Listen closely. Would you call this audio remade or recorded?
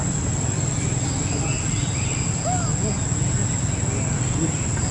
recorded